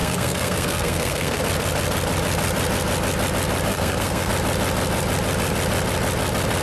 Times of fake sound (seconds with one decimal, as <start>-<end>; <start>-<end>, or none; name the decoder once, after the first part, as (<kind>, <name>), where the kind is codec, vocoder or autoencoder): 0.0-1.4 (codec, SNAC); 3.7-4.3